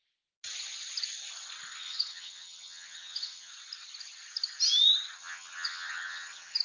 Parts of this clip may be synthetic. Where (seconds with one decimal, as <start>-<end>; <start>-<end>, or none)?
1.7-3.5; 5.2-6.6

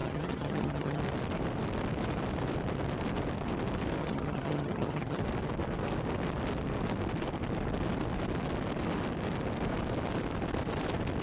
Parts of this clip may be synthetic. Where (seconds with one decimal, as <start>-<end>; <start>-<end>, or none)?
0.0-1.0; 4.0-5.2

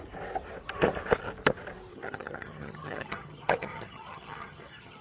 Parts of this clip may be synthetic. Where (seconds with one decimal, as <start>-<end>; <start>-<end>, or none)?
1.9-5.0

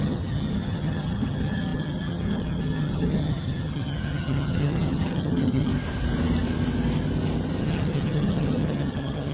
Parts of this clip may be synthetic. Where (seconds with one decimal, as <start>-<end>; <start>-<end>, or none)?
0.0-5.7; 7.6-9.3

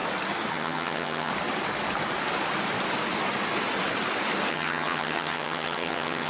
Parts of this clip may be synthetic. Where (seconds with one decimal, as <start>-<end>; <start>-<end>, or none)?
0.5-1.3; 4.5-6.3

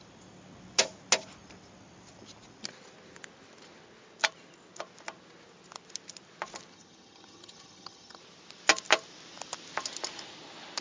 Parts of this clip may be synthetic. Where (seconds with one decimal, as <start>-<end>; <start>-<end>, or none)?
6.7-8.2

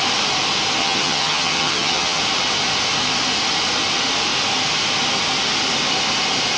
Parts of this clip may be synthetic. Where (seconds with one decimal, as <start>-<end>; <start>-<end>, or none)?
0.8-2.2

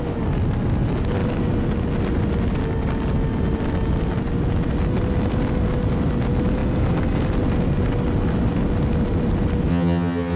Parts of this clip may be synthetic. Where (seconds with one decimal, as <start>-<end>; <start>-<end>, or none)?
9.7-10.4